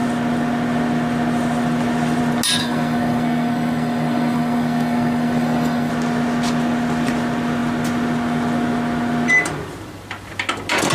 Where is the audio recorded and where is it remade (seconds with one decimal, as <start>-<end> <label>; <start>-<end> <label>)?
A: 0.0-2.6 recorded; 2.6-5.9 remade; 5.9-10.9 recorded